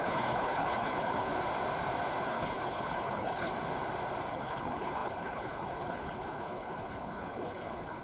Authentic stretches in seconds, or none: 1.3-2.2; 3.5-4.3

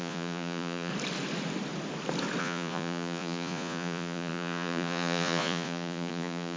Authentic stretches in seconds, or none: 0.9-2.4

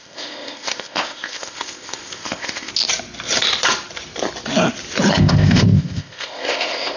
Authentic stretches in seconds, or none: 2.7-5.2

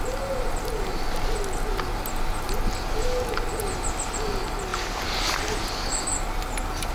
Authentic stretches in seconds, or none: 0.0-6.9

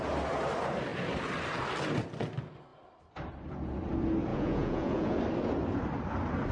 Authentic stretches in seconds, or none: 0.0-4.3; 5.2-6.5

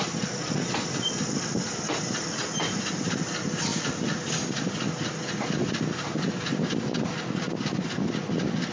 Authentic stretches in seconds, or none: 0.0-8.7

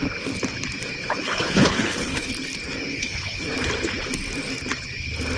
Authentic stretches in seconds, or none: 0.0-1.0; 2.3-2.9; 3.4-5.4

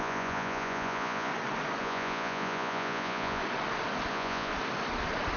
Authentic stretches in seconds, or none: 1.3-1.8; 3.4-4.1; 4.5-5.4